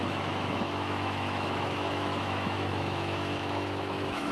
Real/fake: fake